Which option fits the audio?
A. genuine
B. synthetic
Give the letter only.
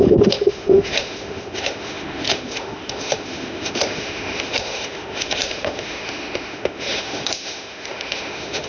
B